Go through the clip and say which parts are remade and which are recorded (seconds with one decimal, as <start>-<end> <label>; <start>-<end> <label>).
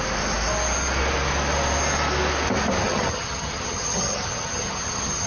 0.0-2.8 recorded; 2.8-5.3 remade